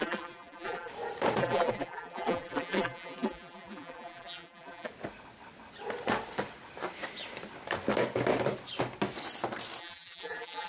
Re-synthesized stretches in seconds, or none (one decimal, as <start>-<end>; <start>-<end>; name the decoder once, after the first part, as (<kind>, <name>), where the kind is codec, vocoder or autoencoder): 0.0-0.9 (vocoder, BigVGAN v2); 1.4-4.9; 9.8-10.7